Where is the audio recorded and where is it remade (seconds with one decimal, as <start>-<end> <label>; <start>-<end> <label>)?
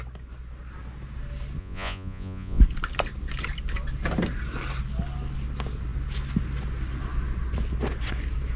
0.0-1.6 recorded; 1.6-2.6 remade; 2.6-8.6 recorded